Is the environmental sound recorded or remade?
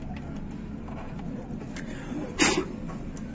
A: recorded